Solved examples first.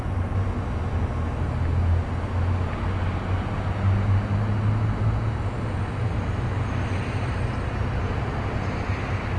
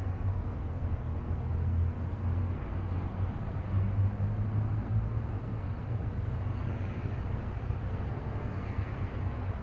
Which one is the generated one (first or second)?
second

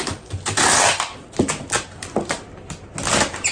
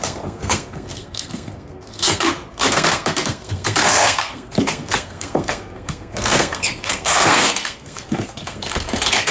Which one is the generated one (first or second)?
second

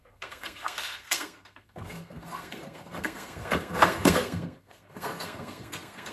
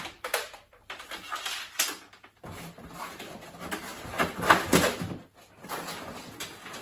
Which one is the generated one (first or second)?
first